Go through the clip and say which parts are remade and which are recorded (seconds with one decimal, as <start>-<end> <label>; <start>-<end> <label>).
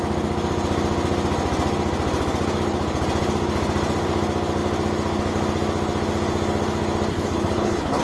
0.0-7.1 recorded; 7.1-8.0 remade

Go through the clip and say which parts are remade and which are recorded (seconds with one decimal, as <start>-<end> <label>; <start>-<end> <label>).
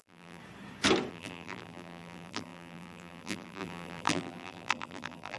0.0-0.4 remade; 0.4-1.1 recorded; 1.1-5.4 remade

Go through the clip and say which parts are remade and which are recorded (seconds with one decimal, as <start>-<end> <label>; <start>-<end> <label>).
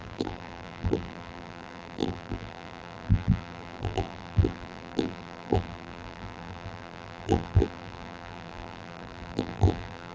0.0-10.1 remade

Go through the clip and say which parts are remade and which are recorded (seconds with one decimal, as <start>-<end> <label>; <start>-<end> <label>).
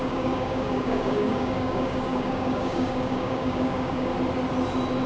0.0-4.1 remade; 4.1-5.1 recorded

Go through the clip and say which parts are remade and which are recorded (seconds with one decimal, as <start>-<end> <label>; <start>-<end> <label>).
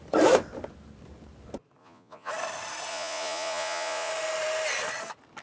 0.0-1.8 recorded; 1.8-2.3 remade; 2.3-2.9 recorded; 2.9-4.1 remade; 4.1-5.4 recorded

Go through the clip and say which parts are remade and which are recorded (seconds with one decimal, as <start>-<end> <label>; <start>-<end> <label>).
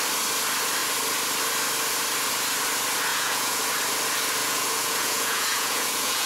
0.0-3.1 recorded; 3.1-3.6 remade; 3.6-4.4 recorded; 4.4-6.3 remade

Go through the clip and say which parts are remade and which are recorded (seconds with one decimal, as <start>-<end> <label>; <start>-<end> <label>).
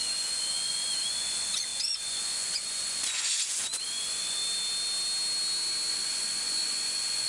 0.0-4.4 remade; 4.4-5.9 recorded; 5.9-7.3 remade